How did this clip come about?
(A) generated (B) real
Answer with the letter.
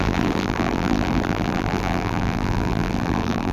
A